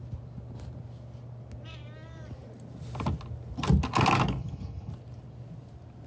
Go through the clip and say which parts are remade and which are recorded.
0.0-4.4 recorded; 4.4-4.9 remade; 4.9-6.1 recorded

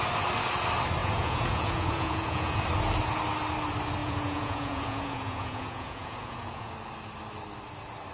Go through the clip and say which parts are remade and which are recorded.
0.0-1.0 recorded; 1.0-2.6 remade; 2.6-4.0 recorded; 4.0-6.7 remade; 6.7-8.1 recorded

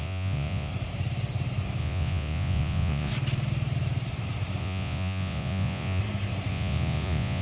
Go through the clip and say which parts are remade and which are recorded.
0.0-0.7 remade; 0.7-1.8 recorded; 1.8-3.1 remade; 3.1-4.6 recorded; 4.6-6.0 remade; 6.0-6.5 recorded; 6.5-7.4 remade